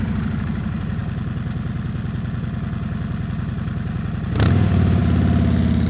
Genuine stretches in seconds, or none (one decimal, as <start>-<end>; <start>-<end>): 1.0-4.5; 5.0-5.9